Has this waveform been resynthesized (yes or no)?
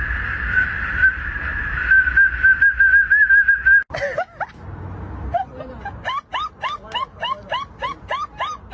no